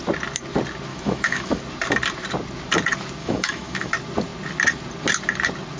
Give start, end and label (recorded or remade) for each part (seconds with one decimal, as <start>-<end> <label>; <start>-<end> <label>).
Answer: 0.0-0.9 recorded; 0.9-1.6 remade; 1.6-3.2 recorded; 3.2-3.9 remade; 3.9-5.8 recorded